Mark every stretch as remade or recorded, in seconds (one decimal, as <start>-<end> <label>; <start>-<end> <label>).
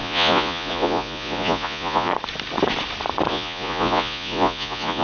0.0-2.1 remade; 2.1-3.3 recorded; 3.3-5.0 remade